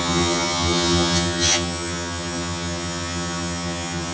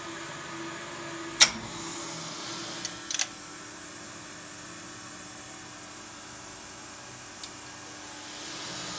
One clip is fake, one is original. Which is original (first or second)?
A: second